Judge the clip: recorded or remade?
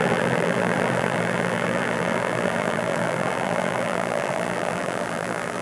remade